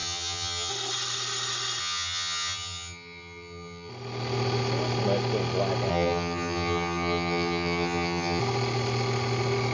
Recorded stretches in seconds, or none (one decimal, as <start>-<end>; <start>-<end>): 0.7-1.8; 3.9-5.9; 8.4-9.7